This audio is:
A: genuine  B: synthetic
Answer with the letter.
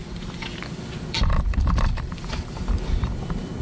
B